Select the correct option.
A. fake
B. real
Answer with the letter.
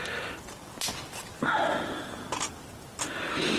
B